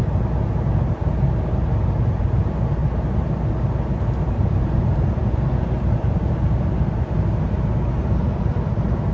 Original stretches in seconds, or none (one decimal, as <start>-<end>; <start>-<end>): 0.0-9.1